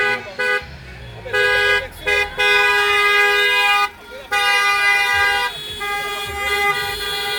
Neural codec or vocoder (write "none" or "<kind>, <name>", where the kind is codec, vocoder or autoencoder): none